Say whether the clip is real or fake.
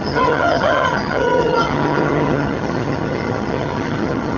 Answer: fake